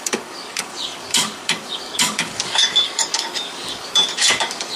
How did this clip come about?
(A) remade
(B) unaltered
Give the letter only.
A